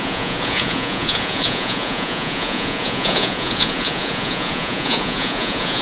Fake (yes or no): yes